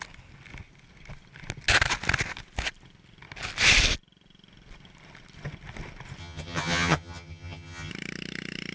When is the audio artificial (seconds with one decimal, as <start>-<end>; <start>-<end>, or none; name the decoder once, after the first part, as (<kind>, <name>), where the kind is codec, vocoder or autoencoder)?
6.2-7.9 (vocoder, HiFi-GAN)

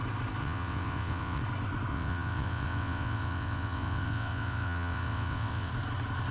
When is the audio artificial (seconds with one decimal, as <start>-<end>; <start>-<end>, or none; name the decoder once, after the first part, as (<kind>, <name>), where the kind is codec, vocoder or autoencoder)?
0.4-1.4 (vocoder, WaveNeXt); 1.9-5.7

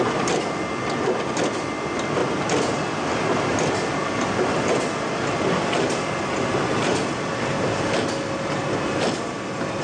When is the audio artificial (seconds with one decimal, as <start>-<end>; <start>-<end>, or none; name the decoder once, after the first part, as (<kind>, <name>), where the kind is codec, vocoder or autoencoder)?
none

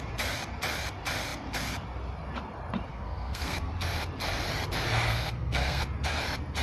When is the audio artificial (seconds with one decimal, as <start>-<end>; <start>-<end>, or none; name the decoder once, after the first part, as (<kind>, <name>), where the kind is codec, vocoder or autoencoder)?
2.9-3.7 (codec, SNAC); 5.1-5.8

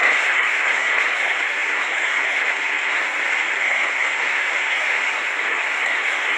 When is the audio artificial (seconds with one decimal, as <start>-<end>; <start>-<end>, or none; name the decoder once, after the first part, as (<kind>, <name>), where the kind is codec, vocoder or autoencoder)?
0.0-6.4 (codec, SNAC)

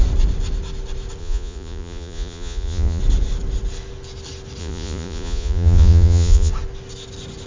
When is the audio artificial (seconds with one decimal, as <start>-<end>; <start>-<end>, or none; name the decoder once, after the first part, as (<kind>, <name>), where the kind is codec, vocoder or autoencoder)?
1.2-3.0 (vocoder, Vocos); 4.6-6.5

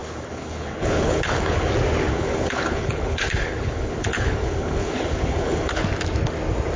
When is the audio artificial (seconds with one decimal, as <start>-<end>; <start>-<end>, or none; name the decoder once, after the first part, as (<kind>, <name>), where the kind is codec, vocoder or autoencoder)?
0.0-1.7 (codec, HILCodec); 2.1-5.8